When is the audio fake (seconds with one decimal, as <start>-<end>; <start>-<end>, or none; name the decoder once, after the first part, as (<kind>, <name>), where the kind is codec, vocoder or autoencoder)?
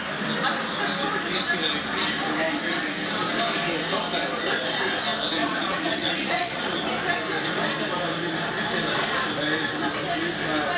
5.4-6.8 (vocoder, Vocos)